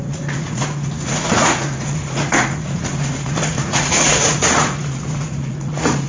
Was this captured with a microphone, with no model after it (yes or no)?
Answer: no